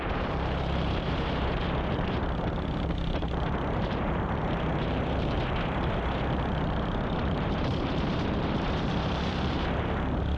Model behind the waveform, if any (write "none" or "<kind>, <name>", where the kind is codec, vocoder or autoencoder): vocoder, BigVGAN v2